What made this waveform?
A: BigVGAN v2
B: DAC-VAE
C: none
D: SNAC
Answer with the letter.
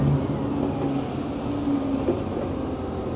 C